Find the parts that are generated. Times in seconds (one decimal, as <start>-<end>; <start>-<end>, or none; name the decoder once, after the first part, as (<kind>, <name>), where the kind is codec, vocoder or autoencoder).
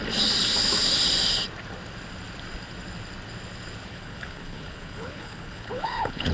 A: 3.9-6.3 (codec, HILCodec)